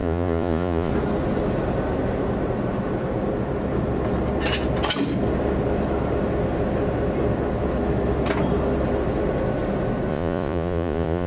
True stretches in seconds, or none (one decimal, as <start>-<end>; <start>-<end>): 0.9-10.1